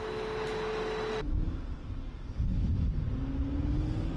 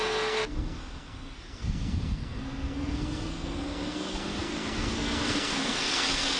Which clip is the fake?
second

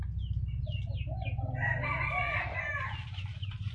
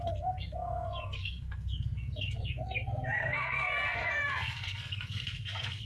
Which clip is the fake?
second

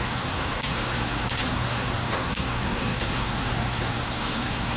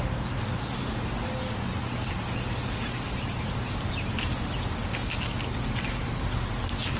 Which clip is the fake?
first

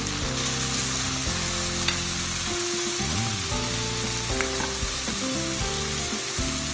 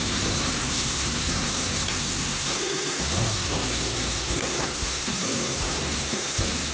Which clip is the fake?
second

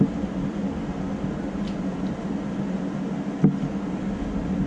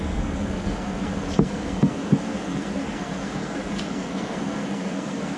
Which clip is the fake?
second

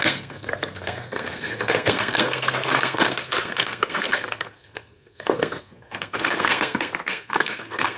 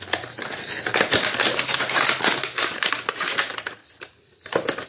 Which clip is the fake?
first